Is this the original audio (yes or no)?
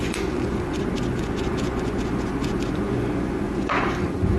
no